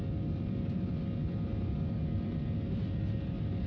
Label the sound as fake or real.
real